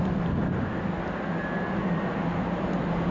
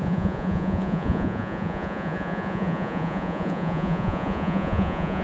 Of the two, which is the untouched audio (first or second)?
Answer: first